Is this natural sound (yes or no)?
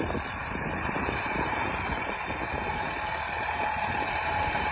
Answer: no